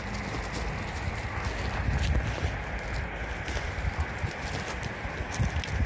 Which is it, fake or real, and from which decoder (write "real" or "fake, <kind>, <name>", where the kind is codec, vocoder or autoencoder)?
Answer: real